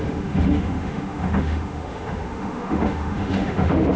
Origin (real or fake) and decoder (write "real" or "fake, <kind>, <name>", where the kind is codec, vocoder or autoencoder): fake, autoencoder, DAC-VAE